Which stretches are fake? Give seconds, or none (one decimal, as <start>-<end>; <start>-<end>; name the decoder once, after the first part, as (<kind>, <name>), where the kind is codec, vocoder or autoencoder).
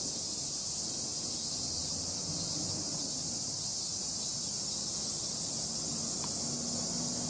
none